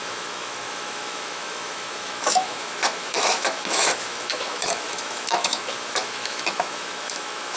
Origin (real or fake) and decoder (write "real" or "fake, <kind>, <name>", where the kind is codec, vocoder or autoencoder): fake, autoencoder, DAC-VAE